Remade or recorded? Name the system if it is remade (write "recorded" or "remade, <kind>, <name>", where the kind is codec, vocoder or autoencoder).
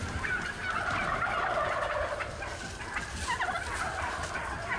recorded